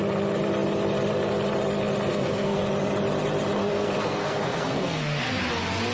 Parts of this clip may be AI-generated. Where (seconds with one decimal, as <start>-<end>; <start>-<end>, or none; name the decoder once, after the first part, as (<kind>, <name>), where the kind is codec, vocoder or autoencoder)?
2.1-2.6 (codec, SNAC); 3.6-5.4